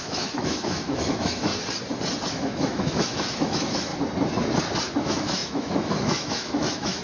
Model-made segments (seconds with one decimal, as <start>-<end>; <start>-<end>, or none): 0.0-1.5; 2.3-3.9; 4.9-7.0